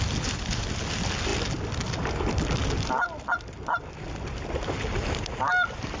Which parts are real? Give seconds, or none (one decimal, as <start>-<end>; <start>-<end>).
0.0-6.0